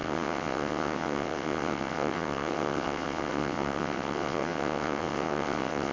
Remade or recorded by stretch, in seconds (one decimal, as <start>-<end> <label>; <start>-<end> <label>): 0.0-5.9 remade